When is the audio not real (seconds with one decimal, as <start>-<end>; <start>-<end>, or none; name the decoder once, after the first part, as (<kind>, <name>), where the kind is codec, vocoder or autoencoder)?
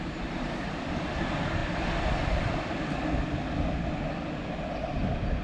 none